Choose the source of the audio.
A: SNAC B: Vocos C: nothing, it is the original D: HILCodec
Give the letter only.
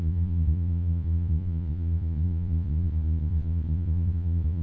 B